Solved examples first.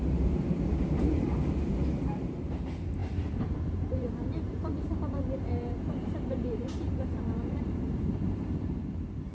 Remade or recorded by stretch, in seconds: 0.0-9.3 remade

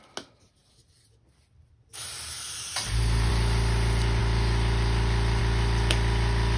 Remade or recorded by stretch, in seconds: 0.0-6.6 recorded